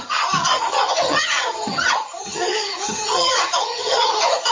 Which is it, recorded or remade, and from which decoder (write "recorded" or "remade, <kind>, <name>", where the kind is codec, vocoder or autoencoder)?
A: remade, vocoder, HiFi-GAN